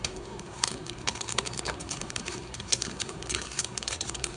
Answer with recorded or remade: remade